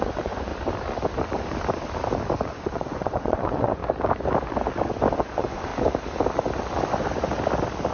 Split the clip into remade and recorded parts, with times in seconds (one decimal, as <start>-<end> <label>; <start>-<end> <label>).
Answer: 0.0-0.5 remade; 0.5-2.5 recorded; 2.5-3.8 remade; 3.8-5.2 recorded; 5.2-5.7 remade; 5.7-7.9 recorded